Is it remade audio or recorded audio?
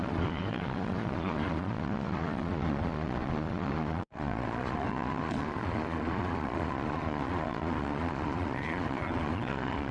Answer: remade